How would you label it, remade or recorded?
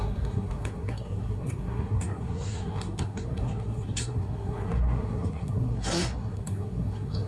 remade